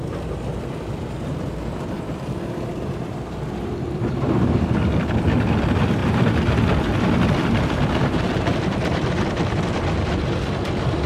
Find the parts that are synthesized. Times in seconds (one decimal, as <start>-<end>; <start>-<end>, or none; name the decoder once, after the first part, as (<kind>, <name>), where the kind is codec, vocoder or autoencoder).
0.0-11.1 (vocoder, BigVGAN v2)